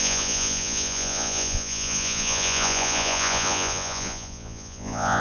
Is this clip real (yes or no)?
no